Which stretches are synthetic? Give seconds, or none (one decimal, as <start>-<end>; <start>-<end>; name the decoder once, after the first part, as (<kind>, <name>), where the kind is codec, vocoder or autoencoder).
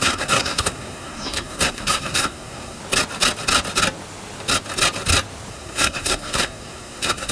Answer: 0.0-2.8 (codec, SNAC); 5.5-7.3